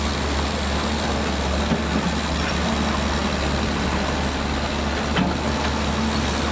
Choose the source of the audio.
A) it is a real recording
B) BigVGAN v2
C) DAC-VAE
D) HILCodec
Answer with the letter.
A